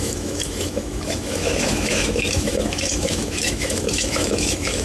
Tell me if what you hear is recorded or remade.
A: remade